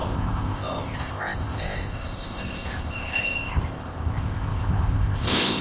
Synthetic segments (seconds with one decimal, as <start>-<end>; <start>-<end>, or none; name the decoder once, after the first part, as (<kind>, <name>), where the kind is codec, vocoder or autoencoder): 0.0-5.6 (codec, ZipCodec)